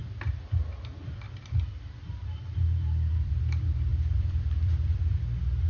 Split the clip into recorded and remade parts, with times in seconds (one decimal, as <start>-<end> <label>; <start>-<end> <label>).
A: 0.0-3.4 remade; 3.4-3.9 recorded; 3.9-5.1 remade; 5.1-5.7 recorded